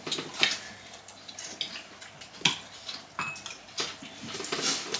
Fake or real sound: real